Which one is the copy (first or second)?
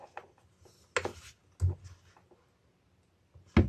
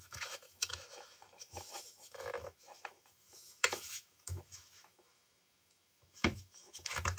second